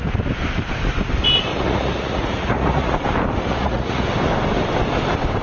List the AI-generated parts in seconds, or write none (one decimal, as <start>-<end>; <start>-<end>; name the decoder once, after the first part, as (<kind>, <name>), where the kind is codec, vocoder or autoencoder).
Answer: 1.5-2.9 (vocoder, Vocos); 3.5-4.1